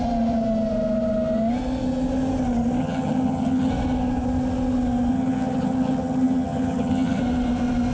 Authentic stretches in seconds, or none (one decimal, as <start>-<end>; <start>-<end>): 0.0-2.8; 3.7-5.1; 7.2-7.9